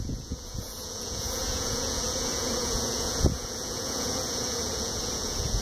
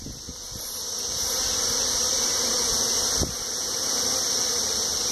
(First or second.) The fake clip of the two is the first